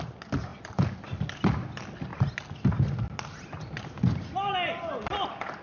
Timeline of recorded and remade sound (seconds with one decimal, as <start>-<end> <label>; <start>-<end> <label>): 0.0-5.6 recorded